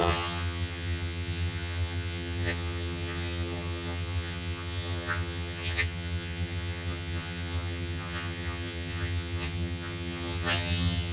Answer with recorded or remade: remade